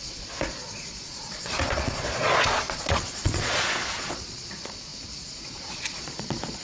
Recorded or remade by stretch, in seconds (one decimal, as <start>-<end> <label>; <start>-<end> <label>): 0.0-6.6 remade